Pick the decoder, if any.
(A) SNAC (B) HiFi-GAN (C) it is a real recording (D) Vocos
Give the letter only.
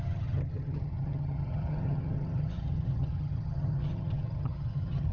B